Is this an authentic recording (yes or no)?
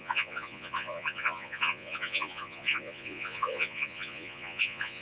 no